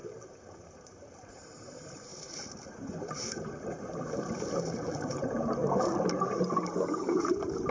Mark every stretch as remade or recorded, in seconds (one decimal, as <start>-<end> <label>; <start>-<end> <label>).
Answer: 0.0-0.5 recorded; 0.5-5.6 remade; 5.6-7.2 recorded; 7.2-7.7 remade